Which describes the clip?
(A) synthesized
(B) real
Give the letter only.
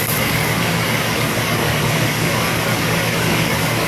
A